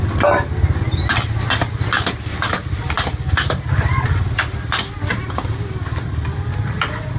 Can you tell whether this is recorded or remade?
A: recorded